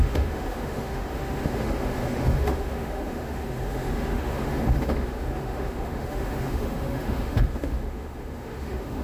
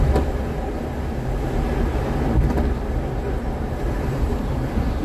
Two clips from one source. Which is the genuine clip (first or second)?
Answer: second